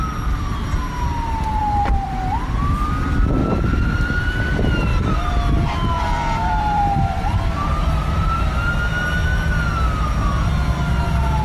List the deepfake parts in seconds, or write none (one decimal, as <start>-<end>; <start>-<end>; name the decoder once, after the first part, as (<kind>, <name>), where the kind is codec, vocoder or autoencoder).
1.6-2.5 (vocoder, BigVGAN v2); 3.4-4.2; 4.9-8.6